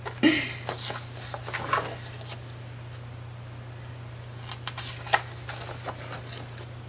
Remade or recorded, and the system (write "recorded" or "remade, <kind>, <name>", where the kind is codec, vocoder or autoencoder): recorded